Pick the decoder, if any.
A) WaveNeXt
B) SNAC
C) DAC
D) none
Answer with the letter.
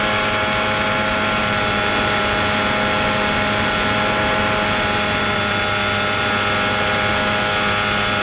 D